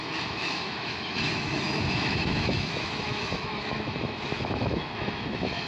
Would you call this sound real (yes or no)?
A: no